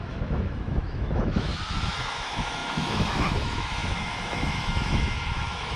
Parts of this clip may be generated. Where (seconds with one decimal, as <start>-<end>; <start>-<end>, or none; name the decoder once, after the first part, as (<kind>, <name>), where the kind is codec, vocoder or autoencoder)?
0.0-1.5 (autoencoder, DAC-VAE); 2.1-5.8